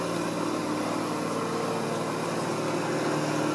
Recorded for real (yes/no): yes